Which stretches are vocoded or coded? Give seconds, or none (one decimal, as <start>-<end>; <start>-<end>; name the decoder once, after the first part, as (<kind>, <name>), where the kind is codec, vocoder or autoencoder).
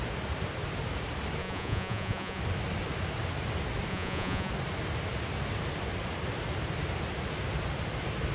1.4-2.4 (vocoder, Vocos); 3.9-4.5